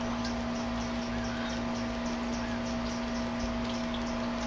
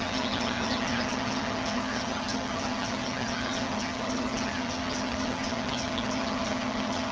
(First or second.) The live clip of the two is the first